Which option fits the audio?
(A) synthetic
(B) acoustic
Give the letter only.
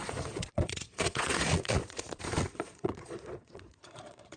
A